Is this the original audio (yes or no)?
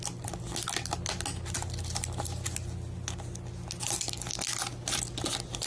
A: yes